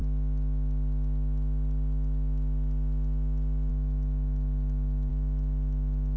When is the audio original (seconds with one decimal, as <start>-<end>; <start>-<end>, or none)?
0.0-6.2